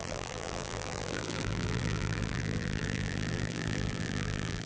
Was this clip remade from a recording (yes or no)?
yes